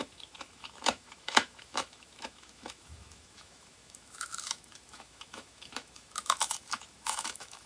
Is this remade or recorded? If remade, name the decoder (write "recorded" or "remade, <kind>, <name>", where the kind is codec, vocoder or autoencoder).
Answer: remade, autoencoder, DAC-VAE